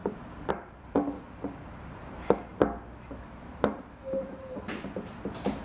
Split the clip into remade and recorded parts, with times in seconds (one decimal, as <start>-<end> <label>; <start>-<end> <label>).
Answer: 0.0-0.5 recorded; 0.5-2.5 remade; 2.5-3.5 recorded; 3.5-5.6 remade

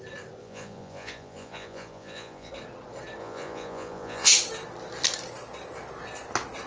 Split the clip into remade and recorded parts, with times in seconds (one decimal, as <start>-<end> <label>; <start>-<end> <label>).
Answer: 0.0-0.4 recorded; 0.4-2.5 remade; 2.5-3.2 recorded; 3.2-4.3 remade; 4.3-6.7 recorded

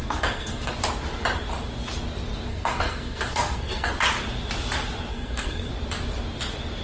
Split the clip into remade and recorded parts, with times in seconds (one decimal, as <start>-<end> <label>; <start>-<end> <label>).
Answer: 0.0-0.7 remade; 0.7-2.5 recorded; 2.5-3.9 remade; 3.9-5.1 recorded; 5.1-5.7 remade; 5.7-6.8 recorded

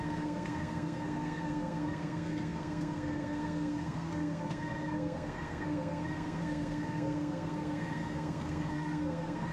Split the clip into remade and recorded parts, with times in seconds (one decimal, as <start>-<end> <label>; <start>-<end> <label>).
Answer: 0.0-9.5 remade

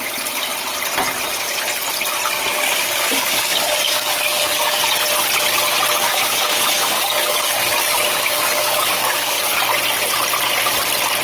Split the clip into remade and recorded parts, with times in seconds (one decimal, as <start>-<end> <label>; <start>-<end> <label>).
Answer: 0.0-2.5 recorded; 2.5-4.8 remade; 4.8-6.0 recorded; 6.0-9.6 remade; 9.6-11.2 recorded